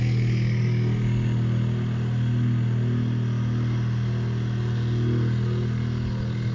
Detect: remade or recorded recorded